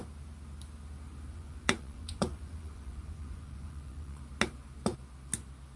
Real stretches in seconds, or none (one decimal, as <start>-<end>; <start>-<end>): 0.0-1.3; 4.2-5.8